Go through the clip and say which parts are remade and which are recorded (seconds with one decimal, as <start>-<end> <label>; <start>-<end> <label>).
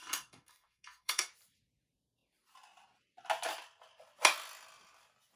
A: 0.0-1.3 remade; 1.3-5.4 recorded